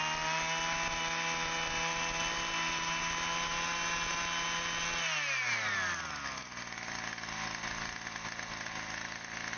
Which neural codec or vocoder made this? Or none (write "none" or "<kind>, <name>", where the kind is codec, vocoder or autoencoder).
none